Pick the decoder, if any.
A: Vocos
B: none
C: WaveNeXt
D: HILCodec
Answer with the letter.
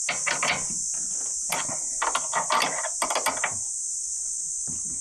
B